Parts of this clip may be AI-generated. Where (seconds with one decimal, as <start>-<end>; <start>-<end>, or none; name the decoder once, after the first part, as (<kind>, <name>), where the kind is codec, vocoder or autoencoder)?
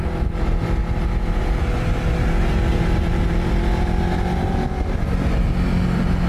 none